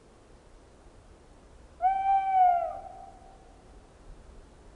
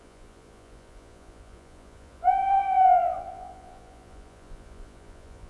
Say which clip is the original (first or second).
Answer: first